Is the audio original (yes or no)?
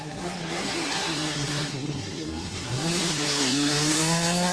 no